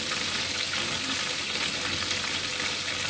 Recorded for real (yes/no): yes